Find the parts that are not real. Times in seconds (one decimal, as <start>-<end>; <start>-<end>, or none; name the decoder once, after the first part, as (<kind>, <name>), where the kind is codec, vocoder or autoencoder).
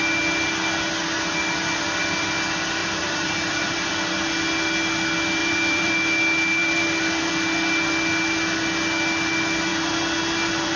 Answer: 2.8-3.9 (vocoder, BigVGAN v2); 5.4-5.9; 6.6-7.3; 9.7-10.8